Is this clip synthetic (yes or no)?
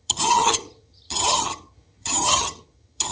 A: yes